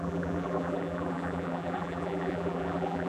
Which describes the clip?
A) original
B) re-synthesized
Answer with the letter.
B